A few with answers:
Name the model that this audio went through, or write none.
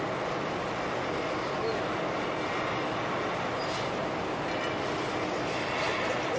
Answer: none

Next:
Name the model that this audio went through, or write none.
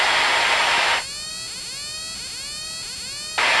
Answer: none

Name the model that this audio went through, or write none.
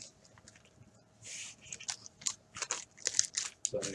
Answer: none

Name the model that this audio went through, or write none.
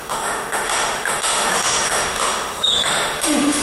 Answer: autoencoder, DAC-VAE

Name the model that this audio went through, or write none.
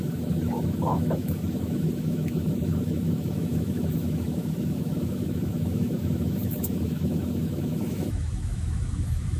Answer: autoencoder, DAC-VAE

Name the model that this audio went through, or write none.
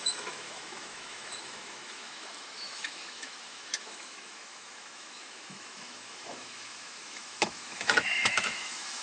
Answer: autoencoder, DAC-VAE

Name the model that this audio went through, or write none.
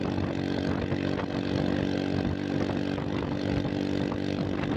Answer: none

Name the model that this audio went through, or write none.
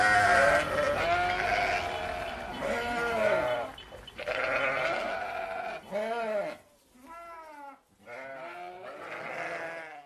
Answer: none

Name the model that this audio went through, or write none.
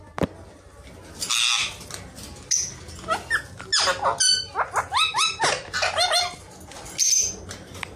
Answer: none